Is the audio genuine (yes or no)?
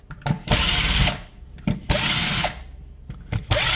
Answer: yes